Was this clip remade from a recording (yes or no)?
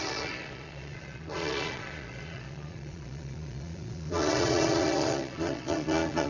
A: yes